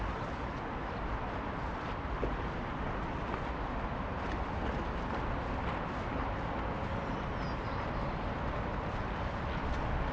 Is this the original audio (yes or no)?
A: yes